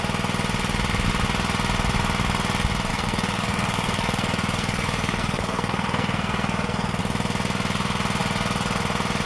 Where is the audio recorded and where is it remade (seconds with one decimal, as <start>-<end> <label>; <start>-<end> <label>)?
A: 0.0-2.9 recorded; 2.9-7.0 remade; 7.0-9.3 recorded